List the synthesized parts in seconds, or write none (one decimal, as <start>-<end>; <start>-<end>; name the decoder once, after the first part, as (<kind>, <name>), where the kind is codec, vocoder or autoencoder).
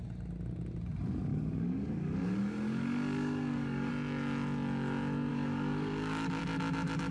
1.3-3.9 (codec, DAC); 5.3-6.4